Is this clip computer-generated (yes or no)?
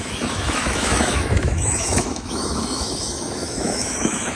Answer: yes